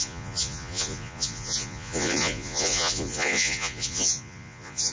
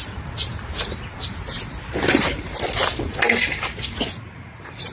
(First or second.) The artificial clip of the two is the first